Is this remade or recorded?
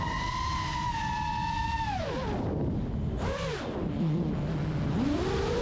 recorded